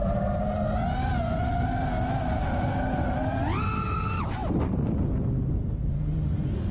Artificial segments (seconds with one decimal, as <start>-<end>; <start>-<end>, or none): none